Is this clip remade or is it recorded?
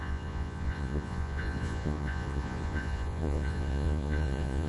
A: remade